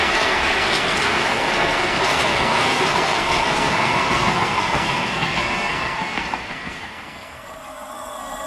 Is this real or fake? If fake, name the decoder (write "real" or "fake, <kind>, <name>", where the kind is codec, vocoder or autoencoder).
fake, codec, SNAC